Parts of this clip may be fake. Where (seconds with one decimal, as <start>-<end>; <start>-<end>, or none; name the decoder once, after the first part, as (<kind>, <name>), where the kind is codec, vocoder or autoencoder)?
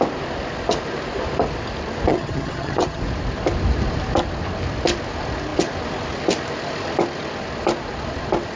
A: 2.1-3.0 (vocoder, HiFi-GAN)